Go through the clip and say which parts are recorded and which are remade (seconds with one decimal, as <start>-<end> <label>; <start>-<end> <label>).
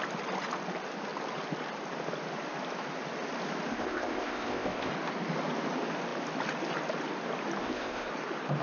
0.0-3.7 recorded; 3.7-4.9 remade; 4.9-7.6 recorded; 7.6-8.1 remade; 8.1-8.6 recorded